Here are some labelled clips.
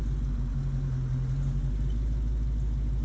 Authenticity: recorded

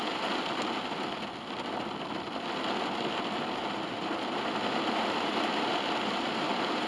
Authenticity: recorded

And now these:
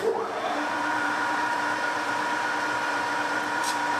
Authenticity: remade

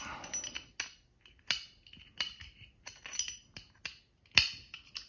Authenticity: recorded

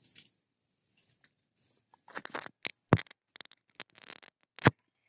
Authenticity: recorded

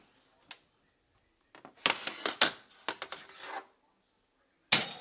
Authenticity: recorded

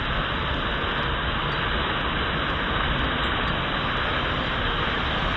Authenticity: recorded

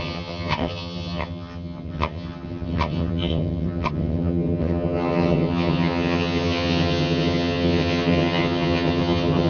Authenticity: remade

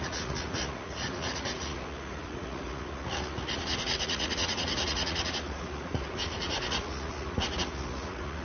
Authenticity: remade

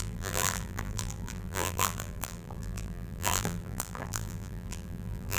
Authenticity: remade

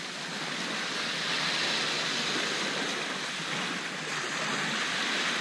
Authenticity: recorded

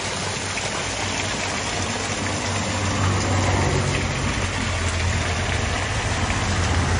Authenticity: recorded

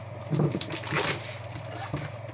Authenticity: remade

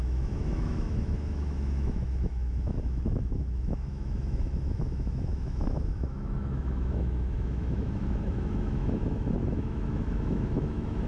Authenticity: remade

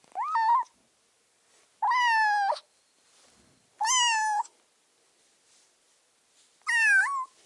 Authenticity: recorded